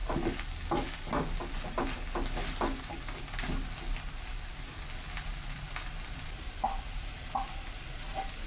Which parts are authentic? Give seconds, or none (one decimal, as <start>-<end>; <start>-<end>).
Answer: 0.0-8.5